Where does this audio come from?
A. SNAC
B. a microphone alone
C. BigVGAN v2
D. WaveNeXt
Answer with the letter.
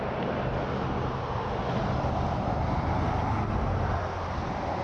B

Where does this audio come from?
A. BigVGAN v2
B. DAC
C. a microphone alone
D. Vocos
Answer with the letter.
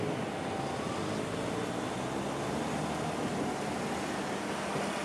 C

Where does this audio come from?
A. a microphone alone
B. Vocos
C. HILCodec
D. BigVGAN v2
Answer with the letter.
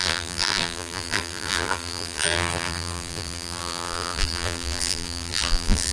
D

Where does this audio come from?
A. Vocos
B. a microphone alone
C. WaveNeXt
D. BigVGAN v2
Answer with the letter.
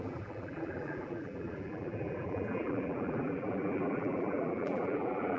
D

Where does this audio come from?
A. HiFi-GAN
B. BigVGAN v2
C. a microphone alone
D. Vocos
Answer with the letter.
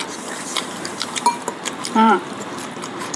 B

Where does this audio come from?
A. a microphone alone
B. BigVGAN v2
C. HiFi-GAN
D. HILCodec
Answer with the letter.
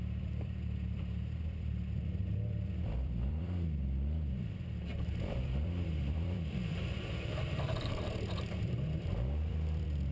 B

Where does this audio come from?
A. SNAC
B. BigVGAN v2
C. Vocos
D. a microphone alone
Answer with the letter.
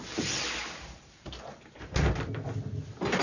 D